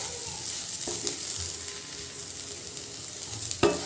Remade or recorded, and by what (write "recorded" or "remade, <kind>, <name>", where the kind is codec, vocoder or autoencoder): recorded